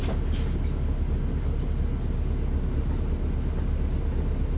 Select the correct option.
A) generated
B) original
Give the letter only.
B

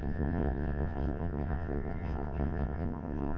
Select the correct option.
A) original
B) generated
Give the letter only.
B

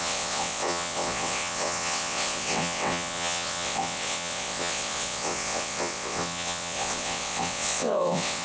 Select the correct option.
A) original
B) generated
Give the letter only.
B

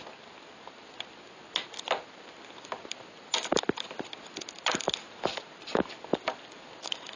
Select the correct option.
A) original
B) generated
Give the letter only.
A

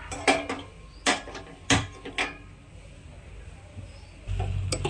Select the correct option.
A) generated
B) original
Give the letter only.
B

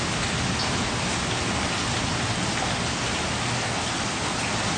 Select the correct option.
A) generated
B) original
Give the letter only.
B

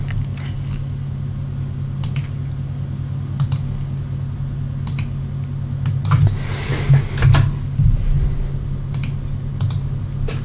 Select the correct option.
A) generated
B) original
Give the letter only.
B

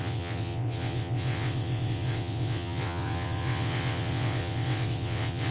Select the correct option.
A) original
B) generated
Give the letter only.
B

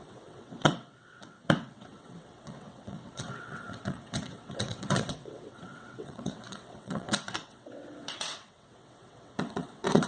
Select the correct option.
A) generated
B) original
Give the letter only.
A